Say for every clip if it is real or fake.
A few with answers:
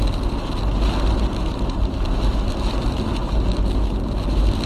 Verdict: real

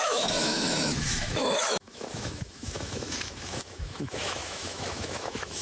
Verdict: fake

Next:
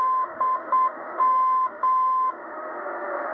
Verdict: fake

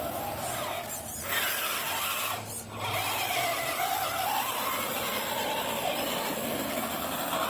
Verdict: real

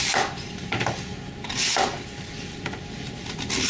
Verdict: real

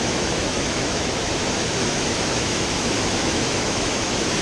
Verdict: fake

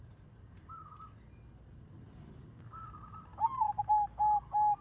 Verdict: real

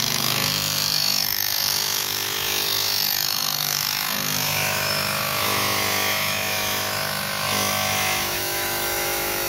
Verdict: fake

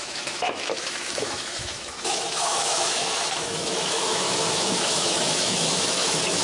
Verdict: fake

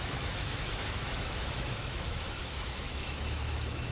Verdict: fake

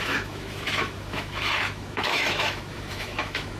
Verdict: fake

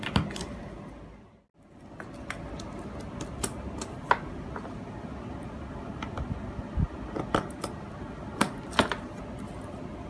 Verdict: real